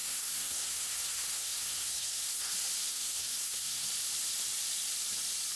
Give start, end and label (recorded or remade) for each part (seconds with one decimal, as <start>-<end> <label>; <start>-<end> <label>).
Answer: 0.0-2.5 remade; 2.5-2.9 recorded; 2.9-3.9 remade; 3.9-5.6 recorded